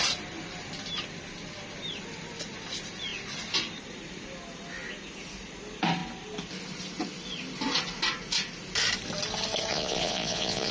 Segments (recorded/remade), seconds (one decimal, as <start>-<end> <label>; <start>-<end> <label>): 0.0-9.7 recorded; 9.7-10.7 remade